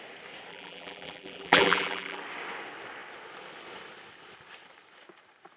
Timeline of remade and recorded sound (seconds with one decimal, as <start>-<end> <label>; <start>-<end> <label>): 0.0-0.5 recorded; 0.5-2.2 remade; 2.2-5.6 recorded